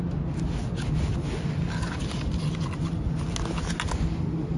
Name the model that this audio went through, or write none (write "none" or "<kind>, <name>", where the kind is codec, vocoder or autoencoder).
none